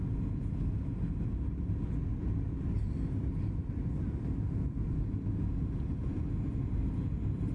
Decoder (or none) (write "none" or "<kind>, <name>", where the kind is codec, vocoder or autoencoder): none